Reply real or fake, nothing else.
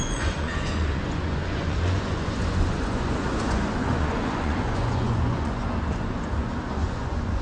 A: fake